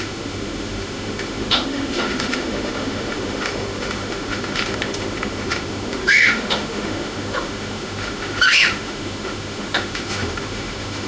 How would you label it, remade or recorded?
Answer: remade